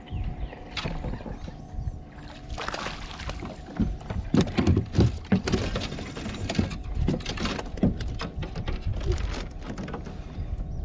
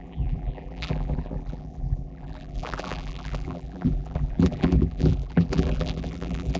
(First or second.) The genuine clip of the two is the first